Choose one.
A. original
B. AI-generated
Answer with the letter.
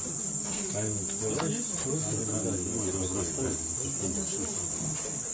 A